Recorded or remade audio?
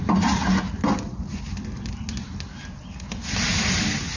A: recorded